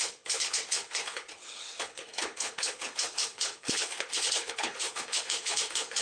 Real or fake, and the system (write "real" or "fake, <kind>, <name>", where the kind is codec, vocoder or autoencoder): fake, codec, HILCodec